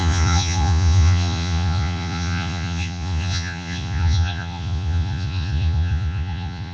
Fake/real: fake